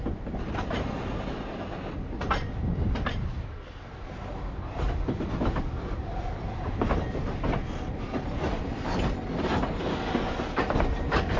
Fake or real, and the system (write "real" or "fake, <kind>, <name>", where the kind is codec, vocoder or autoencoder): real